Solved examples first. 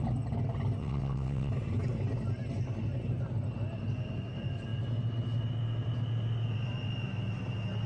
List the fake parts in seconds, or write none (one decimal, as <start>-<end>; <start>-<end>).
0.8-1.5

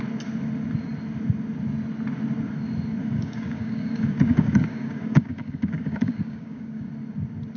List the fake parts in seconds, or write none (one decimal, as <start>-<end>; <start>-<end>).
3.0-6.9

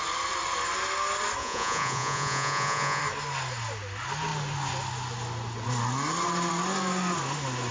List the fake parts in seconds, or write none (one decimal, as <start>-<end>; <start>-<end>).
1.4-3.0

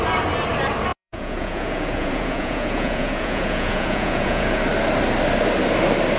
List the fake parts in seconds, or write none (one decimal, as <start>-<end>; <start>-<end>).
0.9-4.6

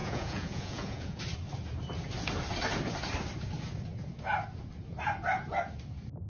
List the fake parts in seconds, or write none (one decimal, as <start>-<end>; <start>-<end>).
0.0-1.2